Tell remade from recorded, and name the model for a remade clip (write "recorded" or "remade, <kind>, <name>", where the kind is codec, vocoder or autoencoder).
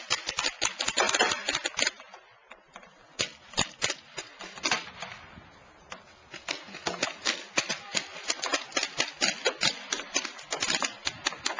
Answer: recorded